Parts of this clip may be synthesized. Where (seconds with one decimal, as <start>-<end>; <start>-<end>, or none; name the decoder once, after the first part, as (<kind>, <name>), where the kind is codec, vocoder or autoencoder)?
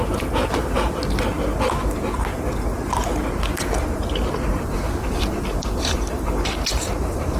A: 0.0-1.0 (vocoder, BigVGAN v2); 4.5-7.4